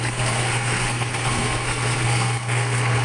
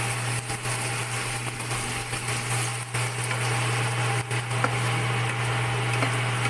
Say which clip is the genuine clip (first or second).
second